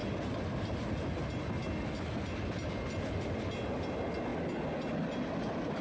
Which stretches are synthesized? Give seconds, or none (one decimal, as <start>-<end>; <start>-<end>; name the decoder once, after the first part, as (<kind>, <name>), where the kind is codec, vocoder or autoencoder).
none